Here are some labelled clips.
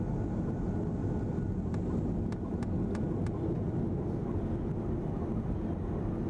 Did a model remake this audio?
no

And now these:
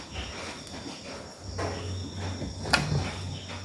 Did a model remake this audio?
no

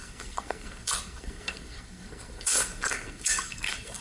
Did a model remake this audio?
yes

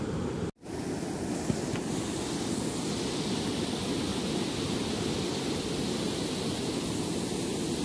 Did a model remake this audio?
no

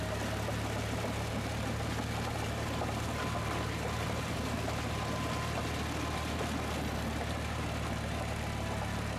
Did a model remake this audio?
no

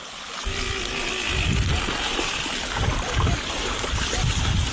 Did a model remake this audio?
no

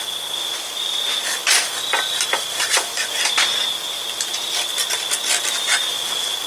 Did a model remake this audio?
no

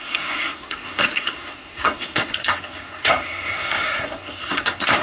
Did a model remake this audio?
yes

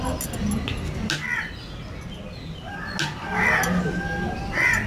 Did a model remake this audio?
no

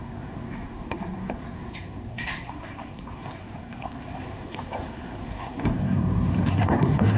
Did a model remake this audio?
yes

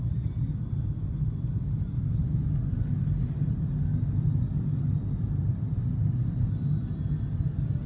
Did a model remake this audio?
no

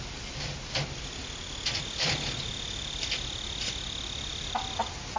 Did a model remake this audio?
no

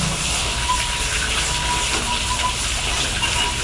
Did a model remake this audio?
no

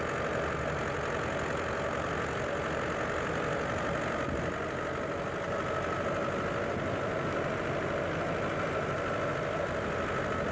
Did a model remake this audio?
no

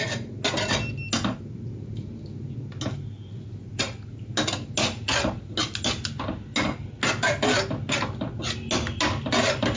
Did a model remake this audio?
no